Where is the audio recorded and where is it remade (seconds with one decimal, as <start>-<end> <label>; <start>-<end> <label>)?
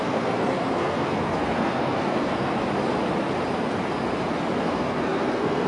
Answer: 0.0-2.5 remade; 2.5-4.6 recorded; 4.6-5.7 remade